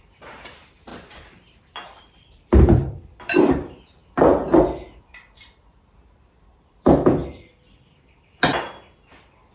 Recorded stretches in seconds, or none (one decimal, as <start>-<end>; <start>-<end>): 4.0-5.7; 7.2-9.1